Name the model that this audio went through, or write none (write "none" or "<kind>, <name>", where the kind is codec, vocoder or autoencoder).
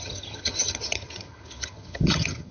vocoder, HiFi-GAN